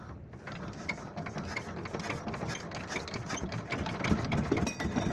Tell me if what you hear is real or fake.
real